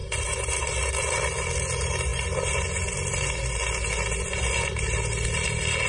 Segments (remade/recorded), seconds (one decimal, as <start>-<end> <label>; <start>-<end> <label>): 0.0-5.9 recorded